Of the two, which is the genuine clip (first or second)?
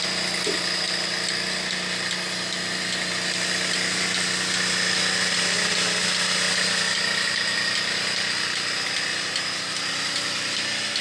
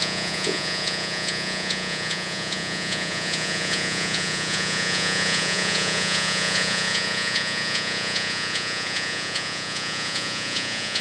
first